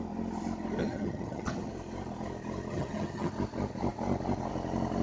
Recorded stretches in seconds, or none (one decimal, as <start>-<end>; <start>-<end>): 0.0-0.8; 1.7-2.7; 3.3-5.0